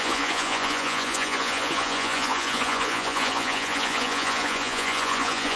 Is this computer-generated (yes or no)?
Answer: yes